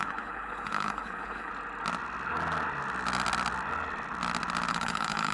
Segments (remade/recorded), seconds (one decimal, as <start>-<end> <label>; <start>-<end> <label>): 0.0-1.5 remade; 1.5-4.7 recorded; 4.7-5.3 remade

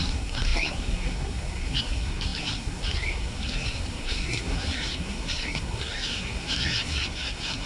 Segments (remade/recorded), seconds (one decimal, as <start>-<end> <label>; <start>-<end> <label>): 0.0-7.7 remade